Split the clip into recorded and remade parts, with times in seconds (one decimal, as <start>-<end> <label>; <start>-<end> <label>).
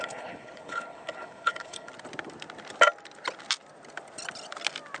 0.0-1.9 remade; 1.9-5.0 recorded